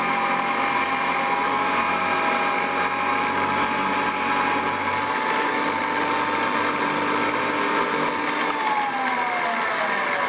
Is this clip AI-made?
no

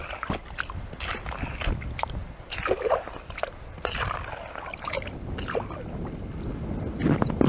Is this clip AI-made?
no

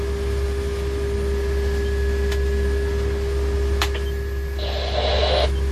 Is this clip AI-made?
no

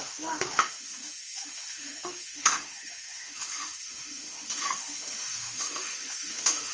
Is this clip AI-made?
yes